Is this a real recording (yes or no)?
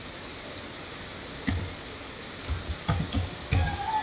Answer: yes